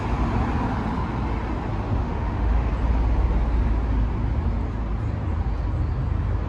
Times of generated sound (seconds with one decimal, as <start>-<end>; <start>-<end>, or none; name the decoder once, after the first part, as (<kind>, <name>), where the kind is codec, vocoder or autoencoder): 2.0-2.7 (autoencoder, DAC-VAE)